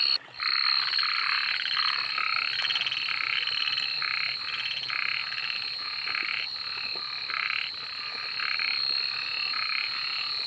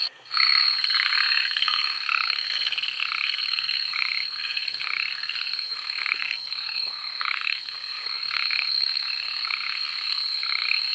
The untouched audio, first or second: first